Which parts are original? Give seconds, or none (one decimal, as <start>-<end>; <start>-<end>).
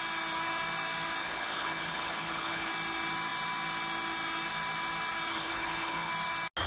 0.0-1.2; 2.7-5.3; 6.1-6.7